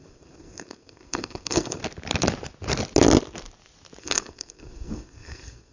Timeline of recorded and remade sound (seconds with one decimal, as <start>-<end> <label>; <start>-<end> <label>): 0.0-1.8 remade; 1.8-4.0 recorded; 4.0-5.7 remade

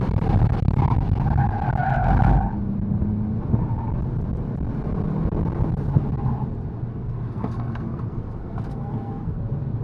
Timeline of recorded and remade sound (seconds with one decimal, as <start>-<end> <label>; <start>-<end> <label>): 0.0-6.9 recorded; 6.9-9.4 remade; 9.4-9.8 recorded

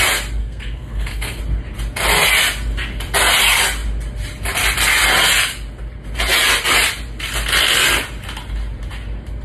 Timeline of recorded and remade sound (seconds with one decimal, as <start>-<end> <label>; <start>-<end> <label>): 0.0-0.4 recorded; 0.4-1.4 remade; 1.4-9.4 recorded

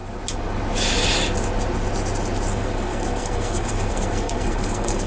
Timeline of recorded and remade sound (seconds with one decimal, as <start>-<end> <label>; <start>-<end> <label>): 0.0-2.5 recorded; 2.5-5.1 remade

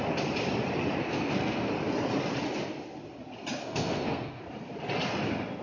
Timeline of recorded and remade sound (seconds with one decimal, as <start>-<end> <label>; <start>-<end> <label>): 0.0-1.0 recorded; 1.0-1.7 remade; 1.7-3.6 recorded; 3.6-4.4 remade; 4.4-5.6 recorded

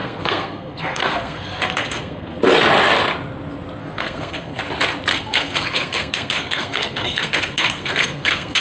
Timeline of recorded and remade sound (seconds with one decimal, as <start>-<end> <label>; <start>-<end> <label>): 0.0-2.4 remade; 2.4-3.8 recorded; 3.8-4.6 remade; 4.6-5.1 recorded; 5.1-8.6 remade

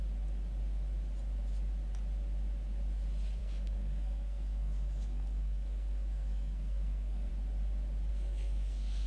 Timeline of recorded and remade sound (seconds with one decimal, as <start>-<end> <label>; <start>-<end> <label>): 0.0-3.4 recorded; 3.4-7.3 remade; 7.3-8.1 recorded; 8.1-9.1 remade

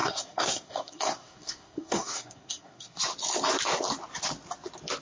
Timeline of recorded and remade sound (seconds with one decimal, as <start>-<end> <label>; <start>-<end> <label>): 0.0-3.0 remade; 3.0-5.0 recorded